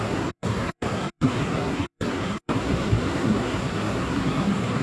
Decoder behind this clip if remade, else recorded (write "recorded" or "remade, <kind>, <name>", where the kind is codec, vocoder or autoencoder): remade, codec, SNAC